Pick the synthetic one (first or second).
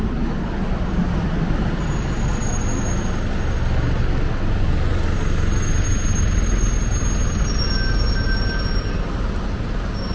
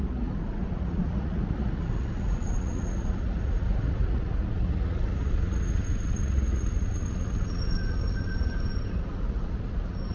second